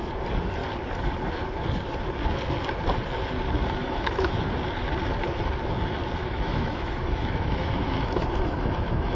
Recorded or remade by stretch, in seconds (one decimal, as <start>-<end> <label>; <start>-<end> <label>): 0.0-3.8 recorded; 3.8-4.4 remade; 4.4-6.2 recorded; 6.2-9.2 remade